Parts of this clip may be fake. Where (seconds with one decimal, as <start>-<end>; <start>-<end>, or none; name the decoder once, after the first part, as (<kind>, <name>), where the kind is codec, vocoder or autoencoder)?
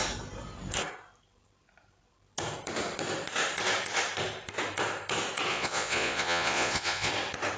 5.5-7.1 (vocoder, Vocos)